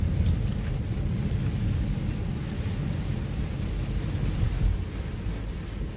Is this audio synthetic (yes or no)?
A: no